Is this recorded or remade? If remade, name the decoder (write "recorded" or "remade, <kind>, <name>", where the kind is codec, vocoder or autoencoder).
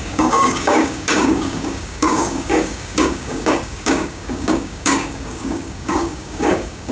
remade, codec, DAC